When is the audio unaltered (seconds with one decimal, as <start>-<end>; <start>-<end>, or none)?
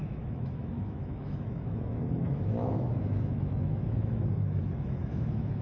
none